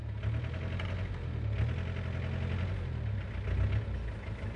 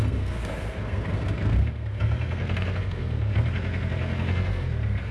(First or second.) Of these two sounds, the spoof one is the second